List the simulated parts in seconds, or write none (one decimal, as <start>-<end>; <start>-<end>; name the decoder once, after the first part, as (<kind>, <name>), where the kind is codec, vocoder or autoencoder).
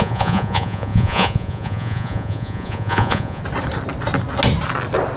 0.0-3.4 (vocoder, Vocos)